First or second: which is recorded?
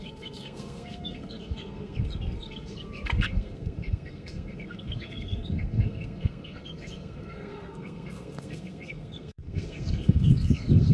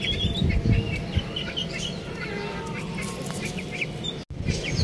second